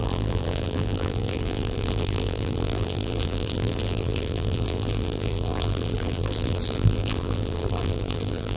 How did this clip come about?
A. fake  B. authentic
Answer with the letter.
A